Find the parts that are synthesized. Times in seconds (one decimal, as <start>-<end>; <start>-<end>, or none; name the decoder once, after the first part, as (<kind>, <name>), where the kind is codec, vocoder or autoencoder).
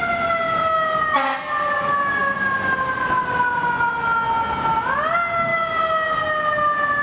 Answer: none